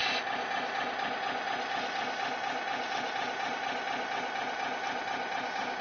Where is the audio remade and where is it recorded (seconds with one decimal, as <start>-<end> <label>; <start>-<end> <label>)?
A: 0.0-5.8 recorded